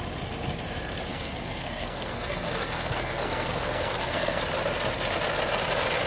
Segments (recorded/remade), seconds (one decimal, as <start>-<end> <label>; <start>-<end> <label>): 0.0-1.1 recorded; 1.1-4.4 remade; 4.4-6.1 recorded